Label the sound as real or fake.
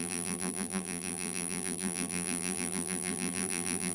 fake